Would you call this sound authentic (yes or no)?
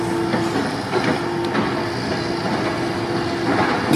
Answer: yes